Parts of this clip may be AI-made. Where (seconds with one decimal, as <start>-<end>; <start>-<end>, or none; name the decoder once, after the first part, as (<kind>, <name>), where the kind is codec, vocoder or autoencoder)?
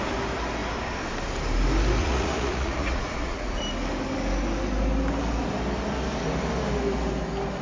2.0-3.6 (vocoder, Vocos)